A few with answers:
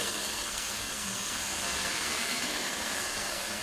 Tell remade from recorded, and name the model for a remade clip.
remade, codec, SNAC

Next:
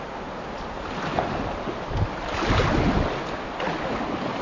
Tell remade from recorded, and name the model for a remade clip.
recorded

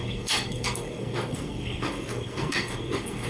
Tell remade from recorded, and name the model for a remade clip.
remade, codec, SNAC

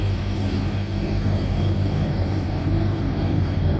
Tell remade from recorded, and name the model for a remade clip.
remade, codec, DAC